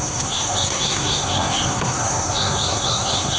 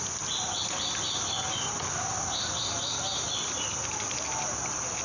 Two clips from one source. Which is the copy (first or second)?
first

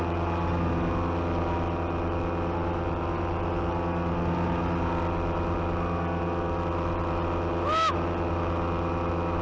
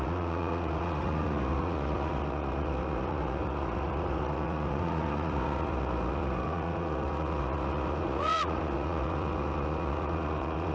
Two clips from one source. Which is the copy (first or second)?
second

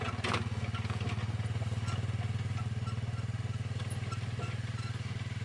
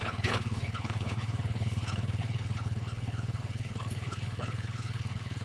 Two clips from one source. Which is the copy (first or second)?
second